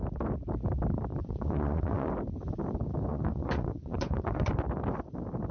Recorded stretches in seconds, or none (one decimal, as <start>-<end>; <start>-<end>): 0.0-1.2; 2.1-3.1; 4.5-5.5